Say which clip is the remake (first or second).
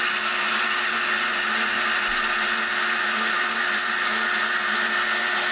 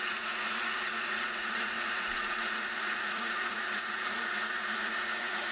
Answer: second